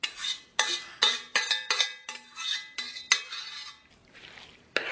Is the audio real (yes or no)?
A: yes